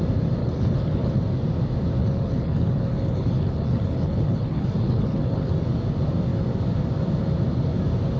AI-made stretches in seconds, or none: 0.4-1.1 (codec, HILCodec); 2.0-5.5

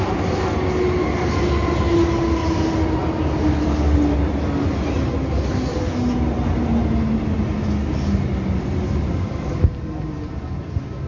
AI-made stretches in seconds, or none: none

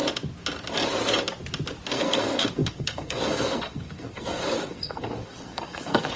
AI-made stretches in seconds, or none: 1.9-6.2 (codec, SNAC)